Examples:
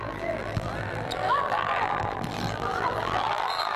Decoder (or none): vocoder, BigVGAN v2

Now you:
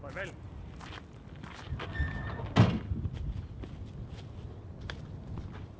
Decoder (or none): none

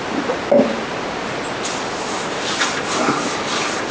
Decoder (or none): none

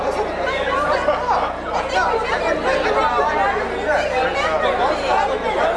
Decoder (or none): none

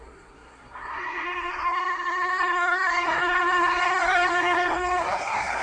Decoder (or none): codec, SNAC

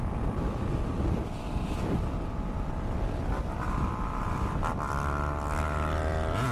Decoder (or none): none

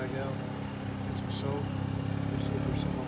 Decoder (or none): none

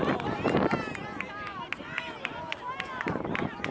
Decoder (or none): none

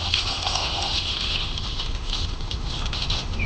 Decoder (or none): autoencoder, DAC-VAE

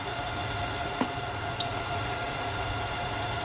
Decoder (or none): vocoder, Vocos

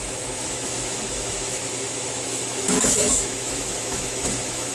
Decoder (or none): autoencoder, DAC-VAE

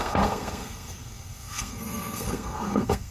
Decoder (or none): codec, SNAC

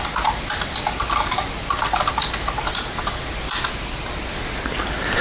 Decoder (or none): none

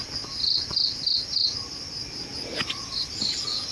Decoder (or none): none